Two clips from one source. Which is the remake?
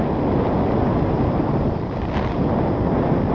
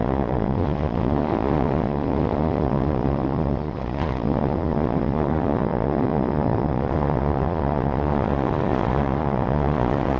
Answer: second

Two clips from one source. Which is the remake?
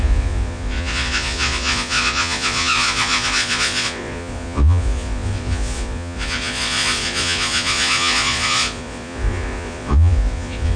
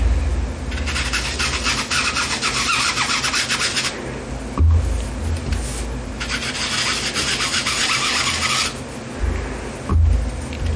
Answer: first